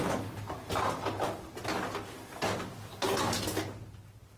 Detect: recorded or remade recorded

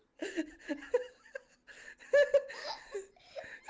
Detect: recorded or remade recorded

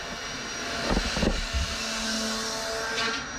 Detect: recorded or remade recorded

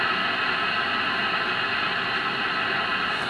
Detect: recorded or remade recorded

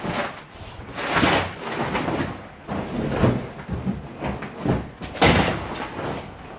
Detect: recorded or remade recorded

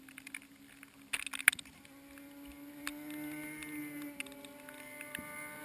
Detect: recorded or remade recorded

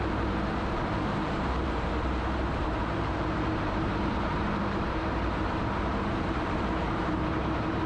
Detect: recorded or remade remade